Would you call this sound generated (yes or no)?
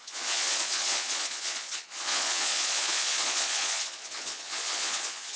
yes